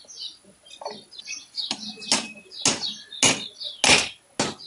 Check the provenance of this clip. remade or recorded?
recorded